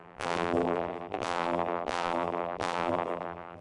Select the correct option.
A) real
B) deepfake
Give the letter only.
B